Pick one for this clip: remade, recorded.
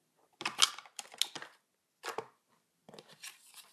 recorded